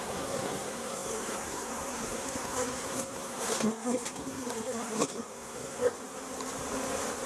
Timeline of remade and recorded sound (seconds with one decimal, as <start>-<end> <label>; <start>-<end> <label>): 0.0-6.0 remade; 6.0-7.3 recorded